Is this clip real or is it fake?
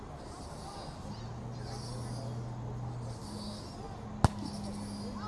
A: real